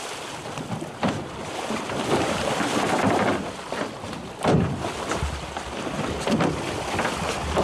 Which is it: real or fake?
fake